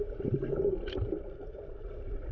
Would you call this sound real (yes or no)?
yes